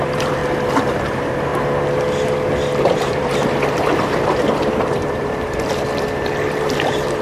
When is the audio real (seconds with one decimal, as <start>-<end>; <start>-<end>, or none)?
0.4-0.9; 1.5-2.8